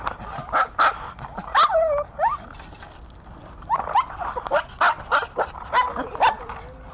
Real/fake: real